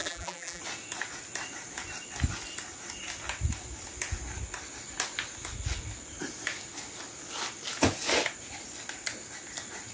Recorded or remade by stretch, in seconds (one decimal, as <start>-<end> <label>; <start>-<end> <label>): 0.0-0.6 remade; 0.6-9.9 recorded